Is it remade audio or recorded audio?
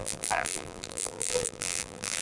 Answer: remade